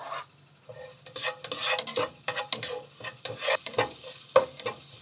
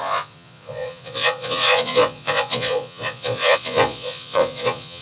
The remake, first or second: second